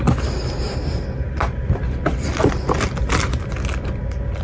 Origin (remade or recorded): recorded